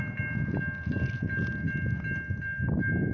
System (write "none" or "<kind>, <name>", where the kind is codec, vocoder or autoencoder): none